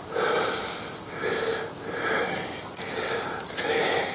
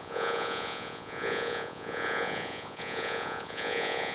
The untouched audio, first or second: first